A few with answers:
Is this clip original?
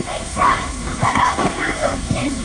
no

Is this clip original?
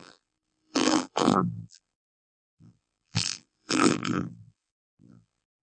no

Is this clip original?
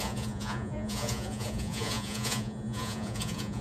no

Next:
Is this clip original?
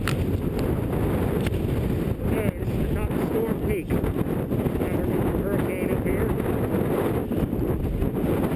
yes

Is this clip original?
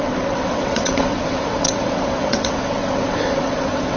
no